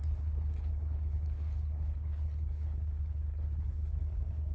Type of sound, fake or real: fake